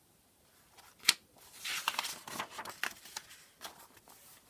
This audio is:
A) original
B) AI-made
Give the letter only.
A